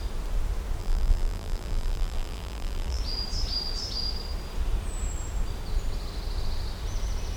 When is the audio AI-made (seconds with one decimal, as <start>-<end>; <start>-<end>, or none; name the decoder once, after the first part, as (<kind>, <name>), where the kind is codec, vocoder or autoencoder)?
0.8-3.0 (vocoder, BigVGAN v2)

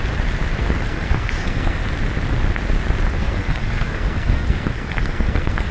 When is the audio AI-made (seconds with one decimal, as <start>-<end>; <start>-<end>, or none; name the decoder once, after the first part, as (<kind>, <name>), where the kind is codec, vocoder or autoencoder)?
0.6-1.8 (codec, SNAC); 3.2-5.7

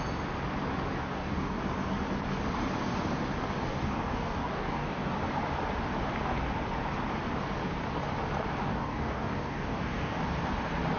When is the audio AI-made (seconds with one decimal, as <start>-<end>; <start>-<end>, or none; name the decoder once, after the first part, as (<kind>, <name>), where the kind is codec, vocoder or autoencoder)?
1.0-1.6 (codec, DAC); 3.7-5.1; 8.7-10.2